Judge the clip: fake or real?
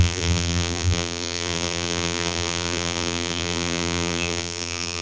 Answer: fake